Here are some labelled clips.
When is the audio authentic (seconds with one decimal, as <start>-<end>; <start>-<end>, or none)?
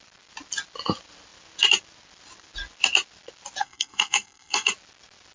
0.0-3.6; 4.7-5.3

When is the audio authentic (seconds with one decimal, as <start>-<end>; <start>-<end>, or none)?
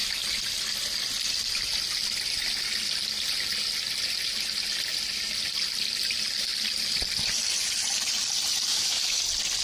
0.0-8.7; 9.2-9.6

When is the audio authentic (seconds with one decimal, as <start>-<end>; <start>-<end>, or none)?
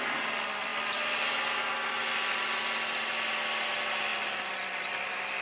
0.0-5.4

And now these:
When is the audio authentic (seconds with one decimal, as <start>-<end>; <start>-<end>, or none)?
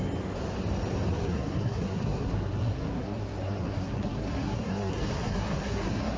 0.0-1.1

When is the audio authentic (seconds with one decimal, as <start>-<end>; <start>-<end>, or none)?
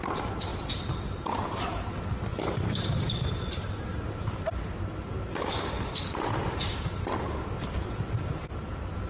0.0-0.5; 1.0-2.3; 6.5-9.1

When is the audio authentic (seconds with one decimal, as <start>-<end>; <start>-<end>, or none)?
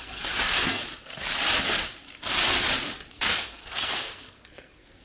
0.8-3.1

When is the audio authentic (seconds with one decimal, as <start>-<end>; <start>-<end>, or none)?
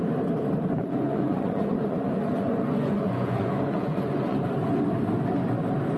0.0-0.8; 4.4-6.0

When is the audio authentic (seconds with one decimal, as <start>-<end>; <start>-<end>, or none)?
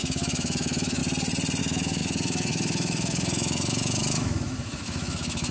1.0-1.6